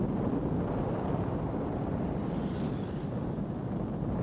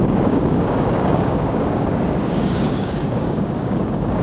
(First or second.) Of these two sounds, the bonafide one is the first